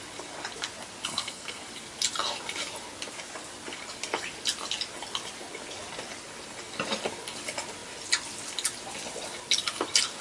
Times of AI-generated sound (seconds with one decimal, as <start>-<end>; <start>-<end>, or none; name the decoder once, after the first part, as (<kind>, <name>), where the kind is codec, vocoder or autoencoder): 1.1-1.6 (codec, SNAC)